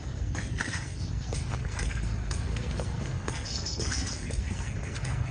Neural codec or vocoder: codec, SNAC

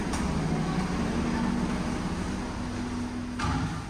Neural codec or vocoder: none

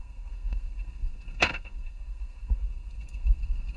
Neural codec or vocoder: codec, SNAC